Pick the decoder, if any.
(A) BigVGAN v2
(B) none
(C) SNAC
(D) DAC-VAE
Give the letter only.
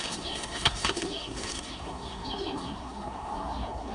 C